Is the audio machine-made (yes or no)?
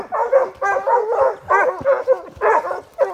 no